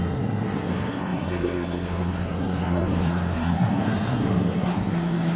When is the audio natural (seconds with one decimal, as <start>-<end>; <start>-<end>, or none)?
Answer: none